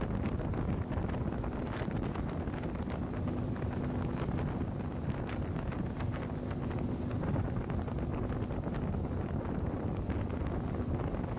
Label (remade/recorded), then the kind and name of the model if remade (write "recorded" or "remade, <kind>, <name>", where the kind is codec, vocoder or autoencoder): recorded